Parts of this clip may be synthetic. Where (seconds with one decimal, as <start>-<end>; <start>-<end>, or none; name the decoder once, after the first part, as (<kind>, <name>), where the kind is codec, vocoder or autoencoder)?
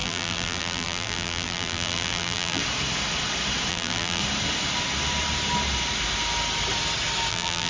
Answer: 0.0-2.6 (vocoder, BigVGAN v2); 3.7-4.2; 7.3-7.7